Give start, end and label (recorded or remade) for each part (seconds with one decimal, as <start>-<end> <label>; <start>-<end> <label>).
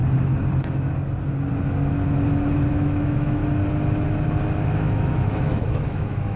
0.0-2.7 recorded; 2.7-3.4 remade; 3.4-4.6 recorded; 4.6-6.4 remade